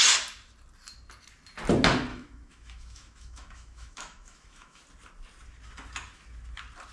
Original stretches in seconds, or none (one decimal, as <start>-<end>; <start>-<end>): 0.0-2.1; 4.8-6.9